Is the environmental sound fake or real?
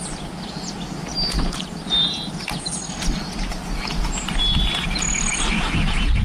real